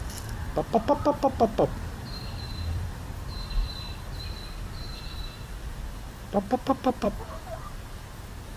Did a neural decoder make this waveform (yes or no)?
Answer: yes